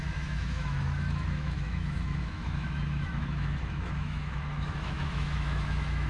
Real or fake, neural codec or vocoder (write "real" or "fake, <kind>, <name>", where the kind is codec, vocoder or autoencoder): fake, autoencoder, DAC-VAE